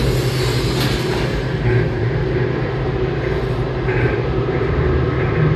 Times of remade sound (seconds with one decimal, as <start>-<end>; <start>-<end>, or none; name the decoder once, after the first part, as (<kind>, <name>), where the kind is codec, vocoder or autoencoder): 1.3-4.7 (vocoder, BigVGAN v2)